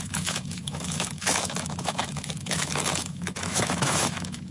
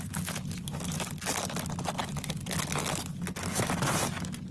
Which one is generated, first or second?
first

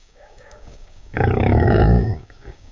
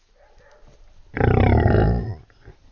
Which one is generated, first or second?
first